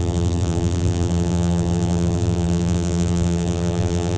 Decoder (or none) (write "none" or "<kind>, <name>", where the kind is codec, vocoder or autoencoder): vocoder, BigVGAN v2